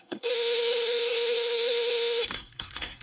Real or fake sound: fake